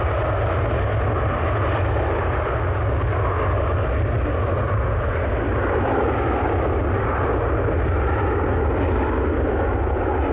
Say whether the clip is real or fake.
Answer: real